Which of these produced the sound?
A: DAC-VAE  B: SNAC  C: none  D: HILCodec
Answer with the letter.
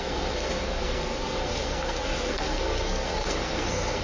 B